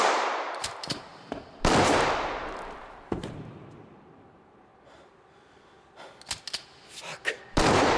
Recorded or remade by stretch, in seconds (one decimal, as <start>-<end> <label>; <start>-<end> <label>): 0.0-1.1 remade; 1.1-2.4 recorded; 2.4-4.7 remade; 4.7-8.0 recorded